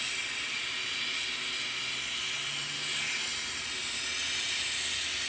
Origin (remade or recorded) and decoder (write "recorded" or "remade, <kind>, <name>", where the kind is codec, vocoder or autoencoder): recorded